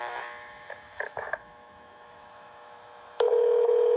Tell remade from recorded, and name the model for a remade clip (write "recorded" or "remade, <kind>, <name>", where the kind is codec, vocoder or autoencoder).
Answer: remade, autoencoder, DAC-VAE